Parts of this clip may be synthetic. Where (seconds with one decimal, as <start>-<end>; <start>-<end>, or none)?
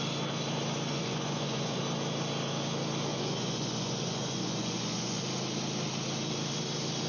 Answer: 0.9-1.8; 3.1-5.2